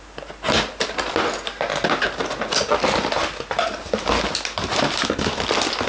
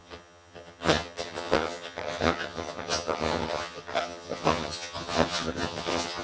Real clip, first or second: first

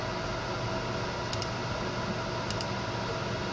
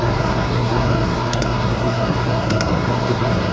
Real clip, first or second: first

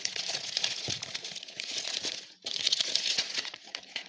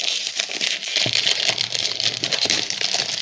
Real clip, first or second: second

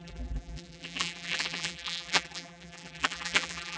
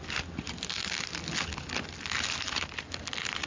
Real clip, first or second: second